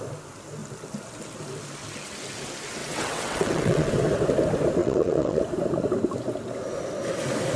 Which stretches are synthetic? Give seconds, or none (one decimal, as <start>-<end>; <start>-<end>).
2.8-3.9; 4.8-5.4